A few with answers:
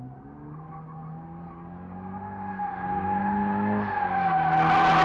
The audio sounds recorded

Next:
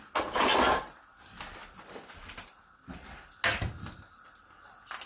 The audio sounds recorded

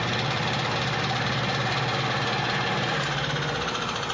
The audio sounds recorded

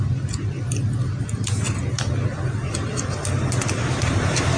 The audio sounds recorded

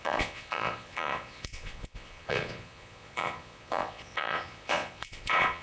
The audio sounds remade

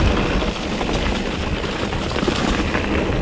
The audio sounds recorded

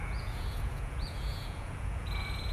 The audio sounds remade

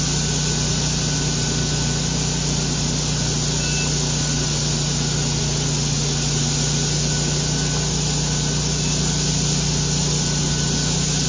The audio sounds recorded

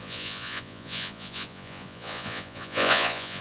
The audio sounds remade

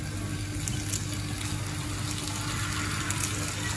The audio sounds recorded